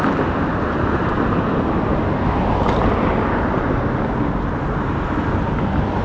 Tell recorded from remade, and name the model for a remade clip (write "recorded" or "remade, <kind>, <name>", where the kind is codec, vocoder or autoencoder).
recorded